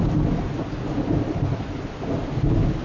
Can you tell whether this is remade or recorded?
recorded